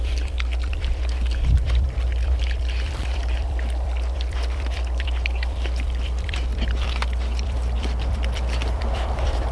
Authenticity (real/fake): fake